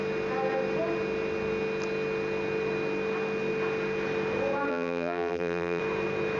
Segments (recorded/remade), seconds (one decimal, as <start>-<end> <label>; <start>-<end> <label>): 0.0-4.7 recorded; 4.7-5.8 remade; 5.8-6.4 recorded